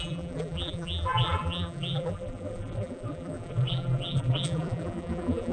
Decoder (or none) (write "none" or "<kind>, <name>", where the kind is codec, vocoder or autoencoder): vocoder, BigVGAN v2